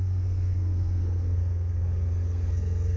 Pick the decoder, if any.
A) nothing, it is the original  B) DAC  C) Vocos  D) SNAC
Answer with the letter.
D